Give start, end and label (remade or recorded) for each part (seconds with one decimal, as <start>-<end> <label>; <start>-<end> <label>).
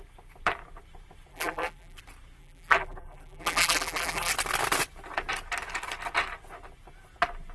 0.0-1.3 recorded; 1.3-2.0 remade; 2.0-2.4 recorded; 2.4-4.3 remade; 4.3-7.5 recorded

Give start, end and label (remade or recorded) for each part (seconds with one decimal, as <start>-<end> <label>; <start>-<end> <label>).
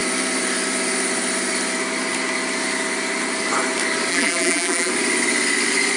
0.0-4.1 recorded; 4.1-4.9 remade; 4.9-6.0 recorded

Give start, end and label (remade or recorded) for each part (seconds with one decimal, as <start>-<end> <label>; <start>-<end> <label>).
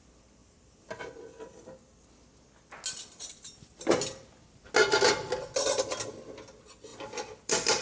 0.0-6.9 recorded; 6.9-7.8 remade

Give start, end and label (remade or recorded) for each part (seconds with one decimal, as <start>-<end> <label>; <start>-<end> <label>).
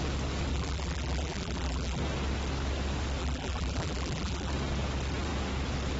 0.0-0.5 recorded; 0.5-2.0 remade; 2.0-3.2 recorded; 3.2-4.5 remade; 4.5-6.0 recorded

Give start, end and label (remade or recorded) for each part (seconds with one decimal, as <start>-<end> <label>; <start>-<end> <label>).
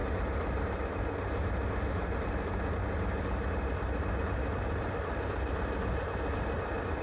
0.0-7.0 recorded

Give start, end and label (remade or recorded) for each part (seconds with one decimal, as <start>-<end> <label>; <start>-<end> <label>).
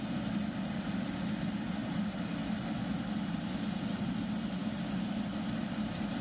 0.0-4.6 remade; 4.6-5.6 recorded; 5.6-6.2 remade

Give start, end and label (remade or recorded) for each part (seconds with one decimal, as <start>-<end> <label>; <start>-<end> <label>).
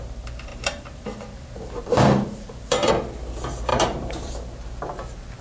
0.0-0.5 recorded; 0.5-2.9 remade; 2.9-3.7 recorded; 3.7-4.3 remade; 4.3-5.4 recorded